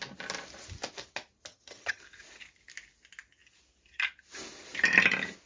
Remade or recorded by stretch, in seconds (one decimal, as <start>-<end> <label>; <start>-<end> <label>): 0.0-1.5 recorded; 1.5-2.0 remade; 2.0-5.5 recorded